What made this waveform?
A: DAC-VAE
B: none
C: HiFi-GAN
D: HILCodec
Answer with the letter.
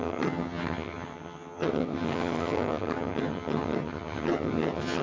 C